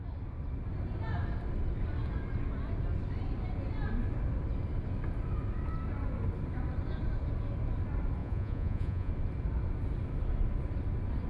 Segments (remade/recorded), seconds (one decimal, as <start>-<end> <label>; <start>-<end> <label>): 0.0-8.2 recorded; 8.2-9.1 remade; 9.1-11.3 recorded